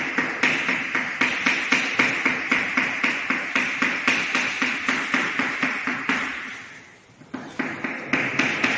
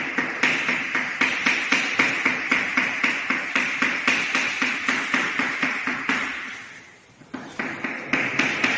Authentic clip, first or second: first